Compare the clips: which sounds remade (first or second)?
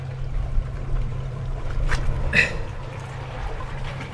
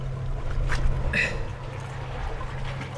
first